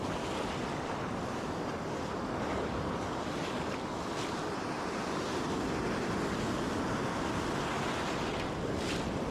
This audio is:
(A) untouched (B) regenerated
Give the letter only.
A